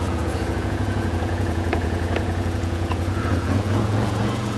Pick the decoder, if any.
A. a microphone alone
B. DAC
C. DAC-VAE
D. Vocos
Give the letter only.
D